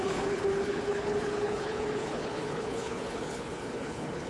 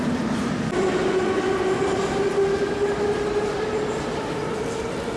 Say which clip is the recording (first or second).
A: second